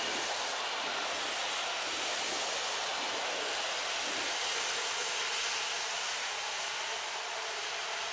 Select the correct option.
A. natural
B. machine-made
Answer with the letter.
A